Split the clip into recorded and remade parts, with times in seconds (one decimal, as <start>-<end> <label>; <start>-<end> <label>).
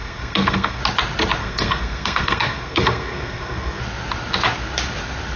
0.0-0.8 remade; 0.8-1.4 recorded; 1.4-3.8 remade; 3.8-5.4 recorded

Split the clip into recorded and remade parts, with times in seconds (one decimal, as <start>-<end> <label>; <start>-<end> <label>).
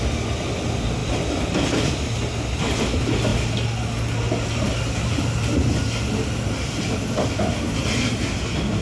0.0-8.8 recorded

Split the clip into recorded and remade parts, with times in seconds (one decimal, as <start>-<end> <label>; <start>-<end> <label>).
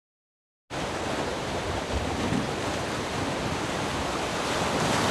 0.0-1.3 recorded; 1.3-4.4 remade; 4.4-5.1 recorded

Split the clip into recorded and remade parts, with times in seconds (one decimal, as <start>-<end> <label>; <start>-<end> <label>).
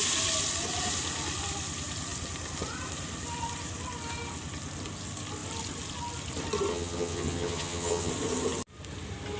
0.0-6.7 recorded; 6.7-8.1 remade; 8.1-9.4 recorded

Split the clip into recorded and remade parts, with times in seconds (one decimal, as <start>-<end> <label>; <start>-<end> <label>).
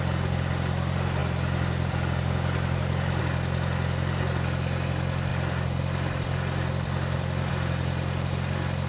0.0-8.9 recorded